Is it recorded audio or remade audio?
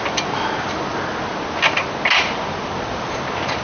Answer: recorded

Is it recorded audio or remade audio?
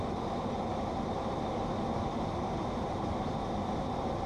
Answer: recorded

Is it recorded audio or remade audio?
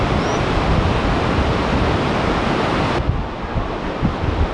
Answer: recorded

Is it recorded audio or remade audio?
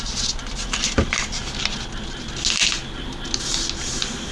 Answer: recorded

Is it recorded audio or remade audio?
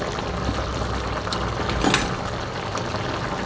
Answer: recorded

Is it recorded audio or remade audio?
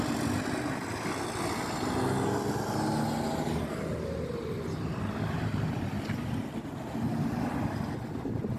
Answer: recorded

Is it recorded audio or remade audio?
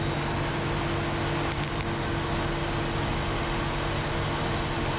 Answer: recorded